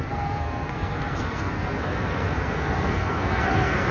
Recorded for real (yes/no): no